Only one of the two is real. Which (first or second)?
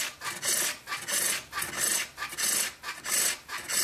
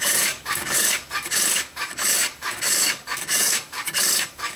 first